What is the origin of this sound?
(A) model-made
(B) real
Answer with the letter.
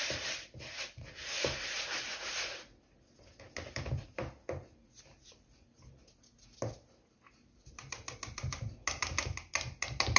B